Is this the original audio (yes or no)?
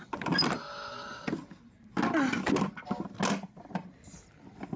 yes